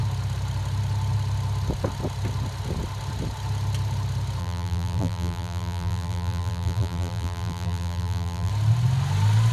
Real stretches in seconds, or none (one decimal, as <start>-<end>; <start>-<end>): 0.0-4.4; 8.5-9.5